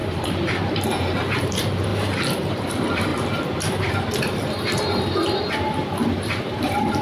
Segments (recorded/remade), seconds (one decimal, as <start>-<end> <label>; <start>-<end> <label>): 0.0-3.1 remade; 3.1-6.1 recorded; 6.1-7.0 remade